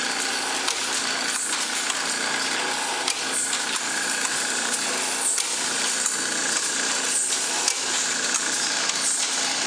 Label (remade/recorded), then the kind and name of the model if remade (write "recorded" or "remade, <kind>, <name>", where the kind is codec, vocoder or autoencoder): recorded